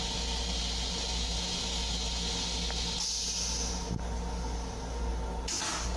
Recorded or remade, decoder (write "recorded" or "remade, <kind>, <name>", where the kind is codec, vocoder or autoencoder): recorded